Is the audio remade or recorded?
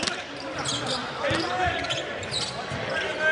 recorded